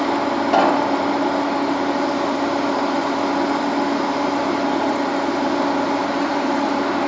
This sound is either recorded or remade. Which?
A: recorded